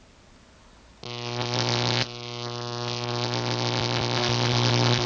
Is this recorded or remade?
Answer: recorded